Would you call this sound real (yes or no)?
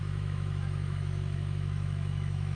no